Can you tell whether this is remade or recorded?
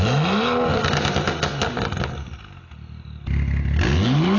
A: recorded